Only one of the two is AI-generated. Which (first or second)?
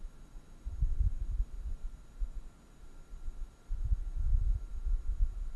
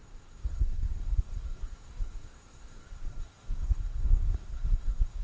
second